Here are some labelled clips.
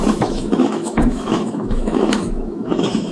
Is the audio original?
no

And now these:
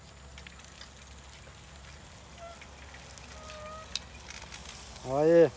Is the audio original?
yes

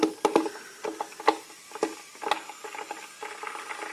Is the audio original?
yes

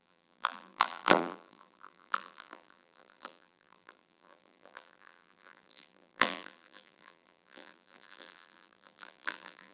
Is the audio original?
no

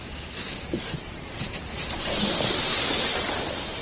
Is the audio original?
yes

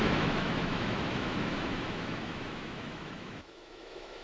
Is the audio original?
no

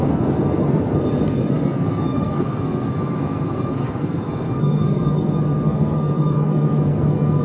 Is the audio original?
no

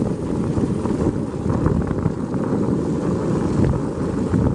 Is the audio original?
yes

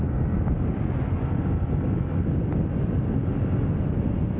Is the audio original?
yes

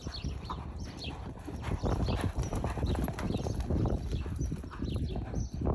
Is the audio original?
yes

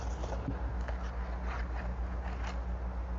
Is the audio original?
yes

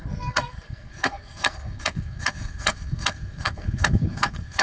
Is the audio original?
no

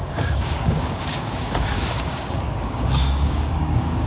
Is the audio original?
no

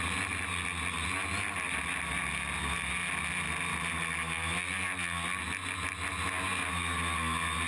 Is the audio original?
yes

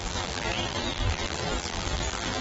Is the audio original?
no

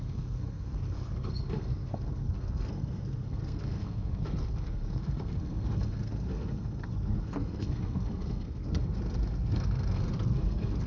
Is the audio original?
no